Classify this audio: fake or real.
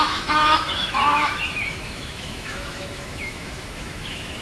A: fake